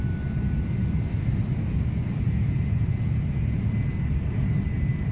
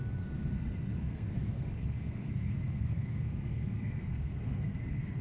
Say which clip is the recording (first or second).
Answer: first